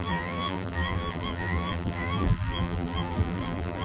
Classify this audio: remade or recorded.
remade